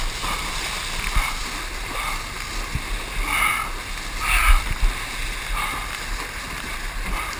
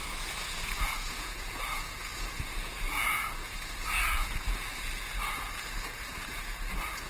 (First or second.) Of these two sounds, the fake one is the second